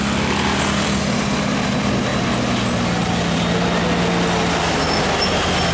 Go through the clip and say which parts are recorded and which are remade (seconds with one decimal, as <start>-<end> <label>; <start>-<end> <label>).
0.0-5.7 recorded